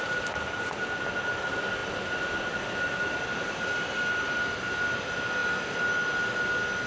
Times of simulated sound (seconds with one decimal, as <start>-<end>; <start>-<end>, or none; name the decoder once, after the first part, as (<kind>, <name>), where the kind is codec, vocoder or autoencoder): none